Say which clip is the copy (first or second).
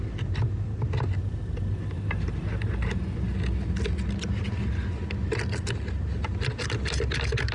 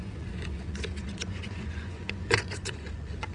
second